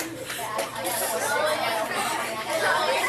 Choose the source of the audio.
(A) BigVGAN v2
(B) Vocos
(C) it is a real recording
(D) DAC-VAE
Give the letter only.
A